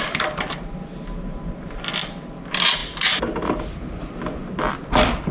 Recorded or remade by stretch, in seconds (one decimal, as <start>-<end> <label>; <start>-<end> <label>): 0.0-5.3 recorded